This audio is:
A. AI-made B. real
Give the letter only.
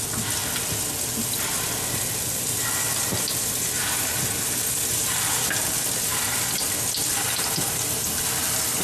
B